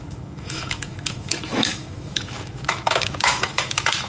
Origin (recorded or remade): remade